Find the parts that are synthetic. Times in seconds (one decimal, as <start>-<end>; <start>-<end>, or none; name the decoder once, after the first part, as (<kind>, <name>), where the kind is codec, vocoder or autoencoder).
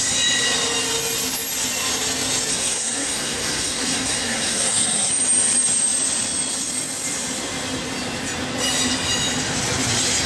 2.5-5.1 (codec, SNAC)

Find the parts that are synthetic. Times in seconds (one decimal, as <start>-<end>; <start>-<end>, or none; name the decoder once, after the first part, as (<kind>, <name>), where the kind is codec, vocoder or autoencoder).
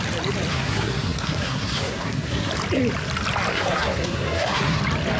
0.5-2.5 (codec, SNAC); 3.5-4.8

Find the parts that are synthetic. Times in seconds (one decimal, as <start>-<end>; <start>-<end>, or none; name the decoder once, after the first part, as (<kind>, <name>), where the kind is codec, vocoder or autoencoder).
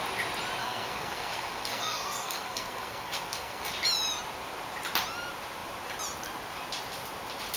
0.6-3.7 (codec, SNAC)